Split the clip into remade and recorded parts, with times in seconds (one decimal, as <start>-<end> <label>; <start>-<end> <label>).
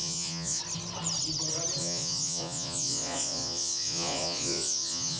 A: 0.0-0.6 remade; 0.6-1.8 recorded; 1.8-5.2 remade